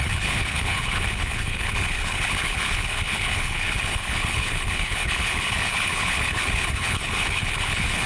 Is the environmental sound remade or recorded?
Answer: remade